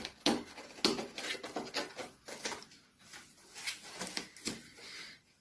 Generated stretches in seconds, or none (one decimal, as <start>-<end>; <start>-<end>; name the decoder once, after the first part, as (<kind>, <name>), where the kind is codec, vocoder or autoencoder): none